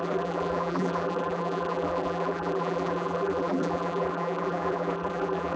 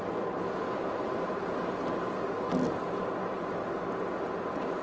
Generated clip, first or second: first